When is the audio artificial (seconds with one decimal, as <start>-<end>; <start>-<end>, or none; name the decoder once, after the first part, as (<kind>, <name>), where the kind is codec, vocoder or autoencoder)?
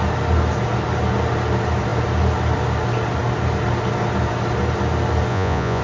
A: 5.3-5.8 (vocoder, Vocos)